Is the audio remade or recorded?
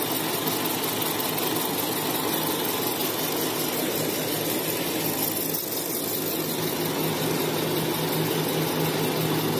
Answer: recorded